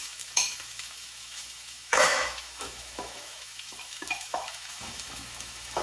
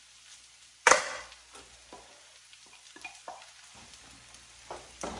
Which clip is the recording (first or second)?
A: second